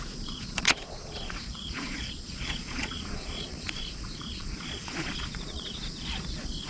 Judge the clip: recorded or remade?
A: remade